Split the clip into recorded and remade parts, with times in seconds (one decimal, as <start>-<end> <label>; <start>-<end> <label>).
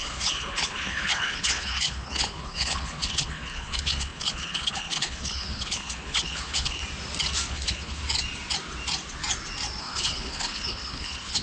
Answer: 0.0-6.8 remade; 6.8-7.5 recorded; 7.5-8.0 remade; 8.0-9.8 recorded; 9.8-11.4 remade